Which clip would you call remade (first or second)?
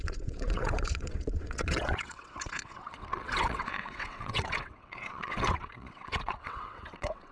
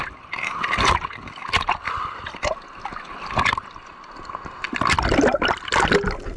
first